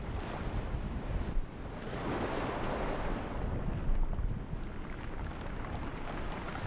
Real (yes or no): yes